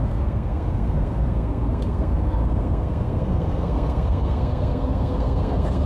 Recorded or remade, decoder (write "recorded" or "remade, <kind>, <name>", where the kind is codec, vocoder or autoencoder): remade, codec, SNAC